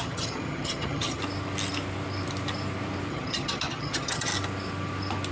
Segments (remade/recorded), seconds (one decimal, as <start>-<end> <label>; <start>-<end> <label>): 0.0-1.2 remade; 1.2-3.1 recorded; 3.1-4.3 remade; 4.3-5.3 recorded